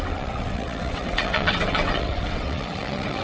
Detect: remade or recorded remade